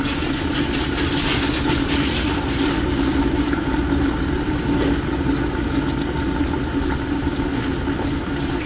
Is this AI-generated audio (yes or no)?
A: no